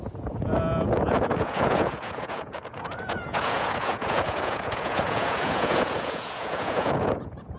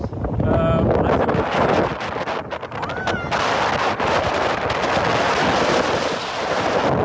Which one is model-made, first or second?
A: first